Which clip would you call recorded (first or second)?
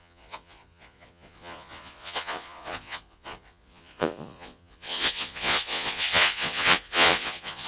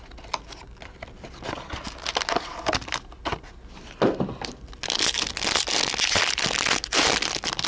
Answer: second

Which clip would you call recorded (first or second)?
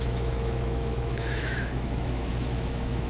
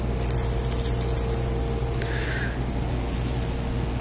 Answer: second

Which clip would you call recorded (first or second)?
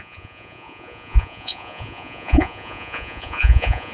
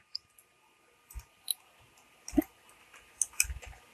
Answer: second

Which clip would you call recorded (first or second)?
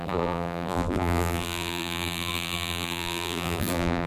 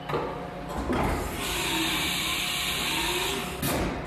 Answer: second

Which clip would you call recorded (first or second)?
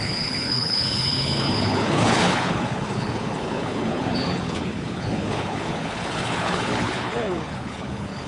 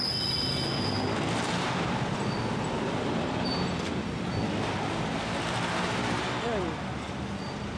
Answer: second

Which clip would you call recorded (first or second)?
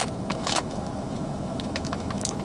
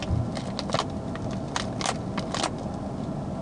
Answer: second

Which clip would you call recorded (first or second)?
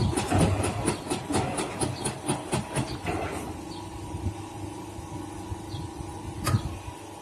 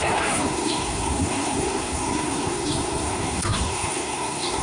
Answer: first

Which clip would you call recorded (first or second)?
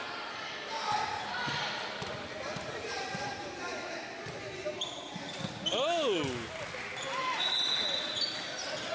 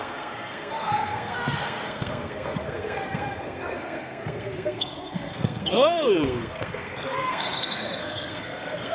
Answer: first